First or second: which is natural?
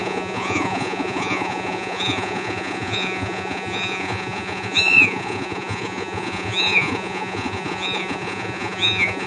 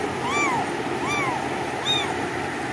second